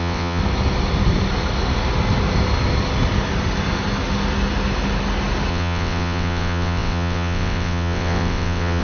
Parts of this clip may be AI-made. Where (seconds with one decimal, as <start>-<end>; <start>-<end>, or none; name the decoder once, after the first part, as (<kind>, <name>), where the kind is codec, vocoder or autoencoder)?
0.0-0.4 (vocoder, WaveNeXt); 5.5-8.8